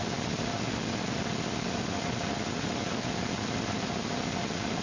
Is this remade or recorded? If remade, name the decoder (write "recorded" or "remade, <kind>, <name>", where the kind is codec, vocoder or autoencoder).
recorded